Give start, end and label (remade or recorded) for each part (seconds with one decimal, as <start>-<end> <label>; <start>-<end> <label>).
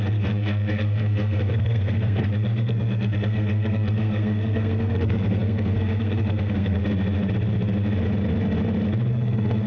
0.0-6.8 remade; 6.8-9.1 recorded; 9.1-9.7 remade